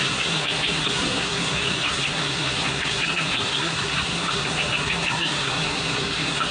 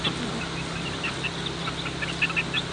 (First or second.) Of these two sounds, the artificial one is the first